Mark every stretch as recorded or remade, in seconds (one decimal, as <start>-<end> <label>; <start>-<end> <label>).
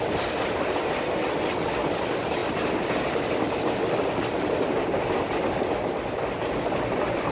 0.0-7.3 recorded